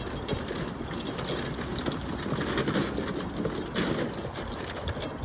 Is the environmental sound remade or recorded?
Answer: recorded